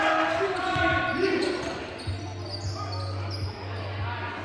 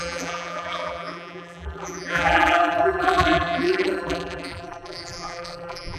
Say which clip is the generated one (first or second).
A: second